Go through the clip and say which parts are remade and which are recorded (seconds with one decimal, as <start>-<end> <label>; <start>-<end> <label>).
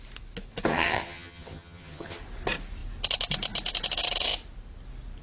0.0-0.7 recorded; 0.7-2.2 remade; 2.2-5.2 recorded